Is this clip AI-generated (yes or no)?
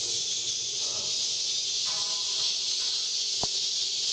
yes